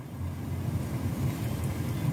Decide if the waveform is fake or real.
real